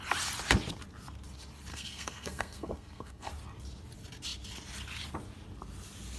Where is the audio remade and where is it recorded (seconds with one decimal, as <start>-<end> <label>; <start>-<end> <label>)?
0.0-1.7 recorded; 1.7-3.3 remade; 3.3-6.2 recorded